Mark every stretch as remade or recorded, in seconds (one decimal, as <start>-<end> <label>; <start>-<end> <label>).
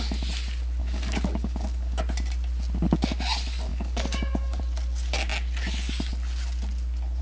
0.0-0.8 recorded; 0.8-2.0 remade; 2.0-3.7 recorded; 3.7-4.6 remade; 4.6-7.2 recorded